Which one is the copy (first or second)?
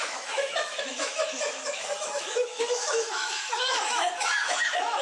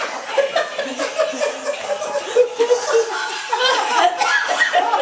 first